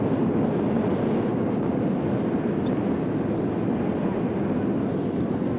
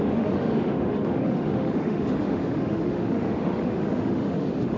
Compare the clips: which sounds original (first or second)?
first